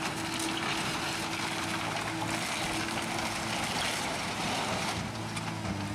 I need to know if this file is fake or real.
real